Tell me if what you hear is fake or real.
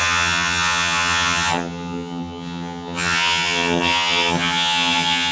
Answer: fake